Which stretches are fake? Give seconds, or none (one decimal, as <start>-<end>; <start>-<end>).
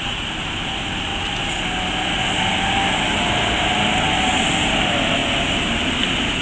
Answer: none